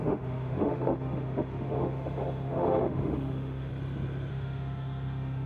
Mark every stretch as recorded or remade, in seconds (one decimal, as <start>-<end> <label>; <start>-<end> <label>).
0.0-3.7 remade; 3.7-4.3 recorded; 4.3-5.5 remade